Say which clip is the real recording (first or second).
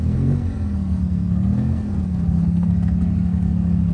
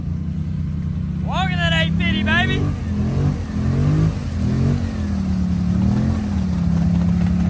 second